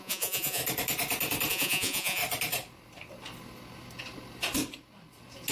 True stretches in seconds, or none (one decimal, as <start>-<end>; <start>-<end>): 0.6-1.5; 2.2-5.5